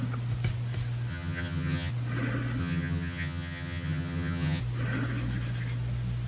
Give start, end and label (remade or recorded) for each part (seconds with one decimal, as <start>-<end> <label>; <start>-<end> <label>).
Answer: 0.0-1.1 recorded; 1.1-1.9 remade; 1.9-2.6 recorded; 2.6-4.6 remade; 4.6-6.3 recorded